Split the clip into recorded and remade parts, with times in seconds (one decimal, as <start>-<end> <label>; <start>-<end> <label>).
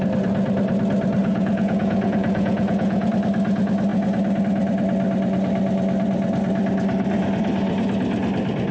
0.0-1.2 recorded; 1.2-3.1 remade; 3.1-8.7 recorded